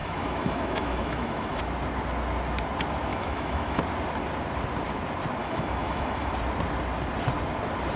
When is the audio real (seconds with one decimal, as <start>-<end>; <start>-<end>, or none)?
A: 1.6-3.1; 3.8-5.4; 6.3-8.0